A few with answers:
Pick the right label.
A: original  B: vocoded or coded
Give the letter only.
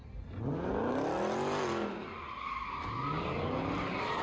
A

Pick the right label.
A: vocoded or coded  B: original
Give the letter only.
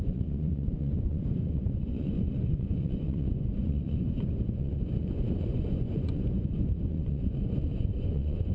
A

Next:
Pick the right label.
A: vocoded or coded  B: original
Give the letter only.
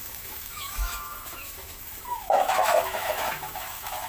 A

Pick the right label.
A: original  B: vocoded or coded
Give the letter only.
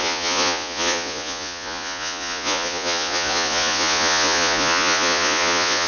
B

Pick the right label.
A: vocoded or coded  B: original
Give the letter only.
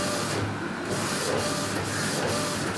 B